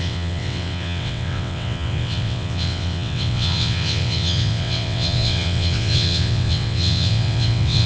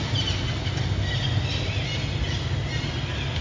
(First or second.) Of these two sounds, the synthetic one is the first